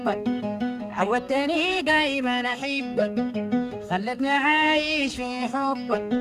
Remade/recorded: remade